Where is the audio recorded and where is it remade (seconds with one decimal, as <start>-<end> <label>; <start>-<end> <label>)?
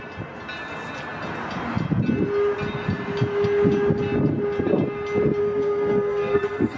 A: 0.0-5.4 recorded; 5.4-6.8 remade